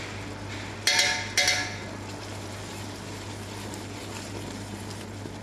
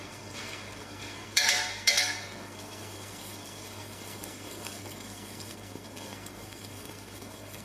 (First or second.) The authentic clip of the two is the first